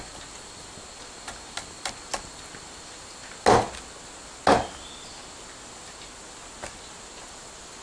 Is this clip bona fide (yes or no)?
yes